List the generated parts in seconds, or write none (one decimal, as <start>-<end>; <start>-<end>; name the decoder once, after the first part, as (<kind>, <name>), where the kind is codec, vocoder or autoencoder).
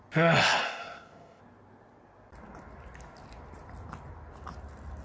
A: 0.6-1.4 (codec, ZipCodec)